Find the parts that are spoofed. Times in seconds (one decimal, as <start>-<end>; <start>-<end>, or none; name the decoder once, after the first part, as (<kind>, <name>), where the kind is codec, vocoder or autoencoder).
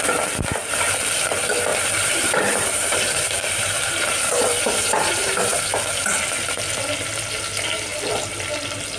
1.7-5.6 (vocoder, BigVGAN v2)